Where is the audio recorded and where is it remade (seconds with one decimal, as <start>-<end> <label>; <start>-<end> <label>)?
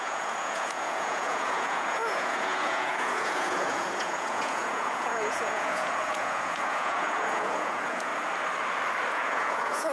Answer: 0.0-8.1 remade; 8.1-9.1 recorded; 9.1-9.9 remade